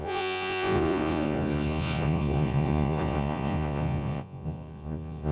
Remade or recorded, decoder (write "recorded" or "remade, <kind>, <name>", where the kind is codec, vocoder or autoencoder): remade, vocoder, Vocos